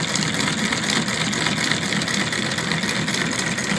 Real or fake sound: real